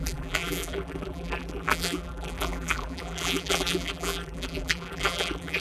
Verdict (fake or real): fake